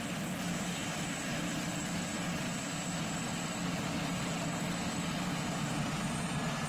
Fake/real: real